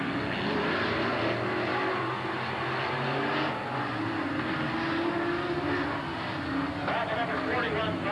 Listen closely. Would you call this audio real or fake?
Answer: real